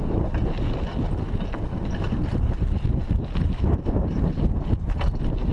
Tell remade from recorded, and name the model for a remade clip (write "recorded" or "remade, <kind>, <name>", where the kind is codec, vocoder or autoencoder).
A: recorded